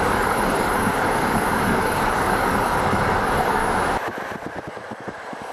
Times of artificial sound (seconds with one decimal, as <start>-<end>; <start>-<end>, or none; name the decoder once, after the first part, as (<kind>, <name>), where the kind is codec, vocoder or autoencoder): 0.0-3.6 (codec, DAC); 4.7-5.5

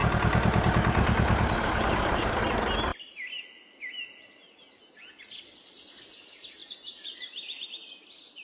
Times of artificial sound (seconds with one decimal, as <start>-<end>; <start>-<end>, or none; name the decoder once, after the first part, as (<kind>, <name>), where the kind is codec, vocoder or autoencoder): 0.0-2.4 (vocoder, BigVGAN v2); 6.6-7.7

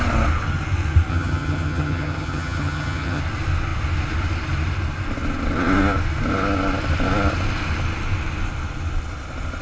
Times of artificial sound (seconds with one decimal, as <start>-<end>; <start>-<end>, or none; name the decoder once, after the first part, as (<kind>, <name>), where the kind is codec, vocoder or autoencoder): 1.1-3.2 (vocoder, HiFi-GAN)

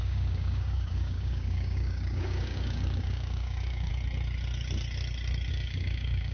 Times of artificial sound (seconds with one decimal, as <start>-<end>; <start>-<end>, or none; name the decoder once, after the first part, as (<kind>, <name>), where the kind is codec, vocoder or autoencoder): 0.0-3.9 (codec, DAC); 5.5-6.3